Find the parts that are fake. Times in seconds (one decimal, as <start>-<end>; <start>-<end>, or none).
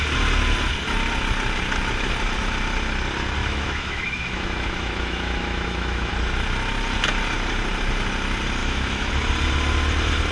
3.4-6.1; 8.6-9.1